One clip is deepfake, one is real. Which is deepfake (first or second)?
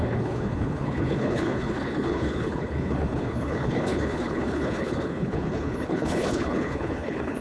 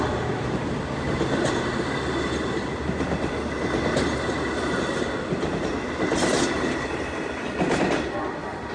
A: first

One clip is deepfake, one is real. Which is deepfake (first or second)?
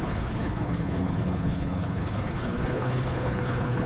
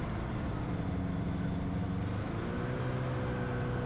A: first